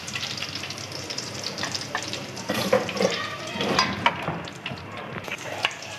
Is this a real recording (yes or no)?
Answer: no